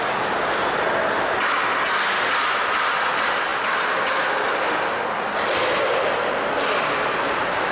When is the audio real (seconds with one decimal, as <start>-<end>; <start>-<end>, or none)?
0.0-7.7